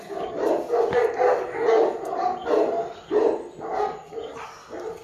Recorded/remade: recorded